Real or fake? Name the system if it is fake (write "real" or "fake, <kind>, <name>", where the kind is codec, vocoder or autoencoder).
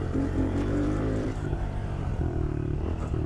fake, vocoder, BigVGAN v2